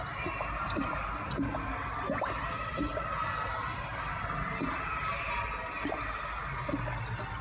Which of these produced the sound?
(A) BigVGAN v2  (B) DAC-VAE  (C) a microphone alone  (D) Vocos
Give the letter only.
C